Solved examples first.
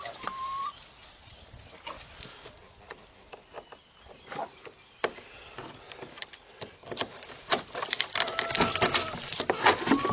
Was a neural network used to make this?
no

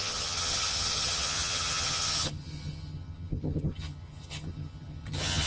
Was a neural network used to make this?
yes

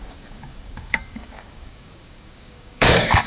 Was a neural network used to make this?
yes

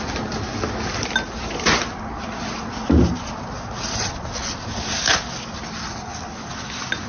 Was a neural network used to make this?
no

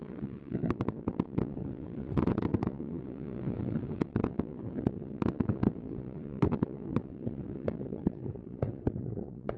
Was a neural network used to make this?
yes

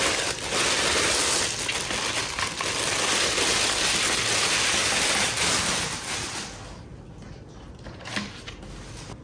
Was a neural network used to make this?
no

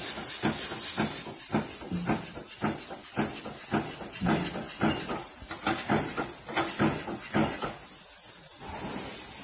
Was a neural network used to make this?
no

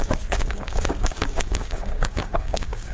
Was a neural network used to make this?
yes